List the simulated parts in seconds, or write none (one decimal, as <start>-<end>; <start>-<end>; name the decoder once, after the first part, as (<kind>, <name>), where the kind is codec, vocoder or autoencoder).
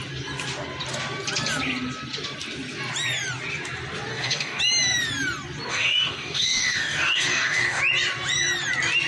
4.1-4.6 (codec, DAC); 5.7-7.8